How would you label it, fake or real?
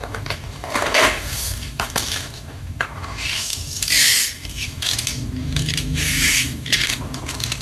fake